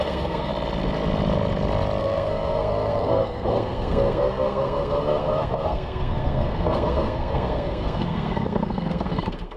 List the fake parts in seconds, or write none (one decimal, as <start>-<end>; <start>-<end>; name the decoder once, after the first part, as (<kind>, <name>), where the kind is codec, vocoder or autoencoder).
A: 0.0-0.5 (codec, SNAC); 2.0-9.6

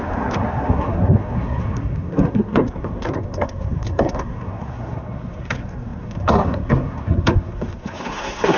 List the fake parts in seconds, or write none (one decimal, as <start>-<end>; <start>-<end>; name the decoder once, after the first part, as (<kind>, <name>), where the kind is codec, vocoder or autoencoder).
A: 0.0-8.6 (codec, SNAC)

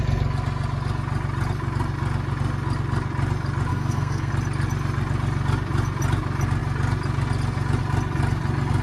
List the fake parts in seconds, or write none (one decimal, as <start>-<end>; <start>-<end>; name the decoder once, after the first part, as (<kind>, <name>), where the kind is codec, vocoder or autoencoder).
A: 3.7-4.3 (codec, SNAC)

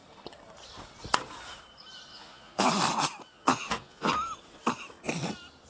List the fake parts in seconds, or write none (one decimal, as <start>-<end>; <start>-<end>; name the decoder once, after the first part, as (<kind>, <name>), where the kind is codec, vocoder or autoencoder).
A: 2.1-2.7 (vocoder, Vocos); 3.3-4.1

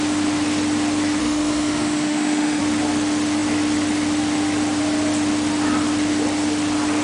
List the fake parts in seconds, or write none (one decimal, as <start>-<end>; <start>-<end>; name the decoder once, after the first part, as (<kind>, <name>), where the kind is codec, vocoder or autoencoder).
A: 1.2-2.6 (autoencoder, DAC-VAE)

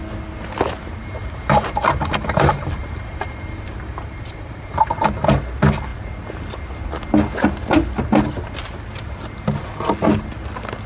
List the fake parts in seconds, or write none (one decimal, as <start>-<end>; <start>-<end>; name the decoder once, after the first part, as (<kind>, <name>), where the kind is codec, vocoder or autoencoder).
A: 1.0-4.9 (vocoder, BigVGAN v2)

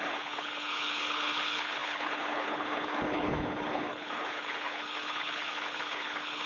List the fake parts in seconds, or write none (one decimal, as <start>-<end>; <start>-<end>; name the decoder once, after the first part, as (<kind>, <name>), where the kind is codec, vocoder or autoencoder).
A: 0.0-6.5 (codec, HILCodec)

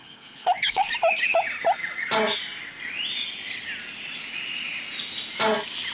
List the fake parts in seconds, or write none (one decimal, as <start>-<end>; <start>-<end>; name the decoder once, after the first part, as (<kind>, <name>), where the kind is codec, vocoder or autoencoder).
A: 0.0-0.9 (codec, HILCodec)